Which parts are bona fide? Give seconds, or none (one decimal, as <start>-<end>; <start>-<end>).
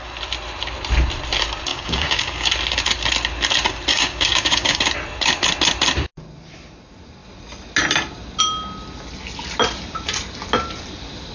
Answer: 0.0-1.7; 2.5-3.9; 4.8-11.3